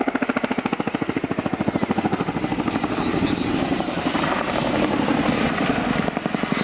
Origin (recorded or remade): recorded